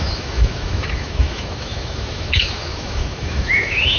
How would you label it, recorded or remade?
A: remade